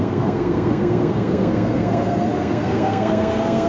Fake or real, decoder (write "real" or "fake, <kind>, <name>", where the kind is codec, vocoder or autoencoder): fake, codec, SNAC